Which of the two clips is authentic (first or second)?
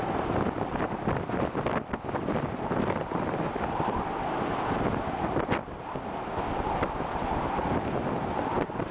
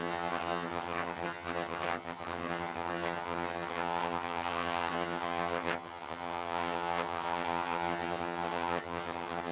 first